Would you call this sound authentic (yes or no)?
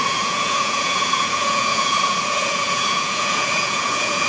no